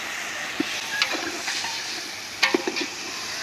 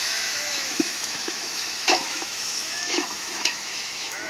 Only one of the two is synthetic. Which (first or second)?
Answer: second